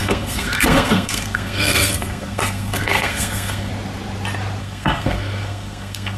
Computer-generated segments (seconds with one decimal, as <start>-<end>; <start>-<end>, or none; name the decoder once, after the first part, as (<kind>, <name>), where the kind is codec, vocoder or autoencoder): 0.0-3.7 (codec, SNAC); 4.6-6.2